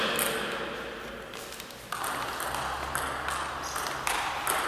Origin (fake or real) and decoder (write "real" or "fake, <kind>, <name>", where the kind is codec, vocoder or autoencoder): real